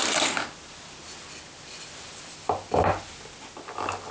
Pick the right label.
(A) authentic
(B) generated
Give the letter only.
A